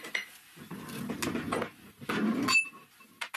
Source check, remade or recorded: recorded